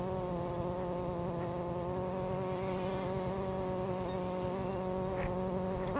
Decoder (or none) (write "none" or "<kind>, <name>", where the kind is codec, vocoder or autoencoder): none